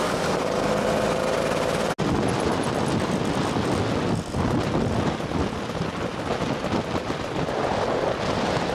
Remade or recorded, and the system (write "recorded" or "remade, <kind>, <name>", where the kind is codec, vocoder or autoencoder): recorded